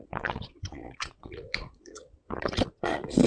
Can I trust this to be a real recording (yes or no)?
no